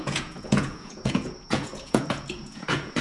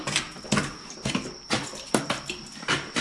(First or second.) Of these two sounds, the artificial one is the first